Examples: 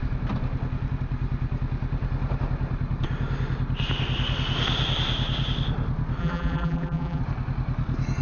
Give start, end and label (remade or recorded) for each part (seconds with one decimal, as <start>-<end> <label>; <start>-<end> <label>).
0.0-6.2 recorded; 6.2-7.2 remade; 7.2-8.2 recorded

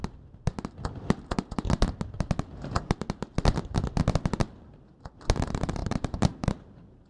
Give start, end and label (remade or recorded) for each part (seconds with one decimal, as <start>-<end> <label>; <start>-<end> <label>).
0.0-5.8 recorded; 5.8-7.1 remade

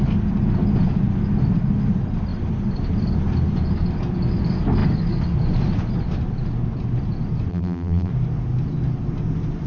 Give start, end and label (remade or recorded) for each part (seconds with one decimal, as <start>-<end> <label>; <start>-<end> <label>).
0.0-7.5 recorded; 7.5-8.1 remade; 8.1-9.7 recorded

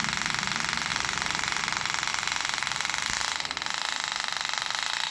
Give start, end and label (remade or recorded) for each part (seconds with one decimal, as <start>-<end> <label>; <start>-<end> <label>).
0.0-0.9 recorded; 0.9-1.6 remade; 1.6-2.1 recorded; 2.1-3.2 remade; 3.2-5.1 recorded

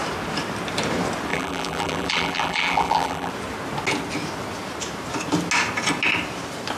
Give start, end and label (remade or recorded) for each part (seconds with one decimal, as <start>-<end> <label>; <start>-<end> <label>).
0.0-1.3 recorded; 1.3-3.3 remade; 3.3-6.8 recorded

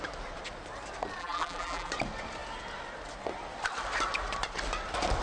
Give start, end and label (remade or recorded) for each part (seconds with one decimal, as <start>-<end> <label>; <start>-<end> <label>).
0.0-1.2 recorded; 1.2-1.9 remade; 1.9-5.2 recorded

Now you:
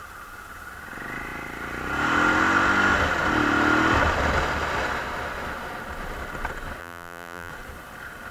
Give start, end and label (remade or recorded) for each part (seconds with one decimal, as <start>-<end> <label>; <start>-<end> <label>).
0.0-6.8 recorded; 6.8-7.5 remade; 7.5-8.3 recorded

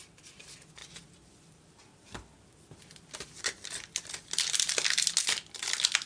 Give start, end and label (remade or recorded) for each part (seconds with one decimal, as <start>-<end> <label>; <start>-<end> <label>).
0.0-0.8 recorded; 0.8-4.4 remade; 4.4-6.1 recorded